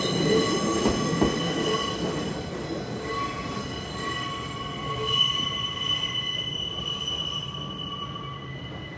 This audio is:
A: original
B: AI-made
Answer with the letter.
A